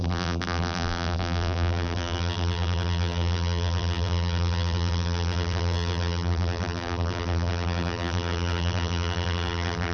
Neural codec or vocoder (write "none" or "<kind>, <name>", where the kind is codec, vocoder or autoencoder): vocoder, BigVGAN v2